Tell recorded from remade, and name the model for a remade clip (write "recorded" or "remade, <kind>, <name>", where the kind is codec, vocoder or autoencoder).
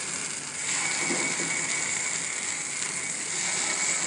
recorded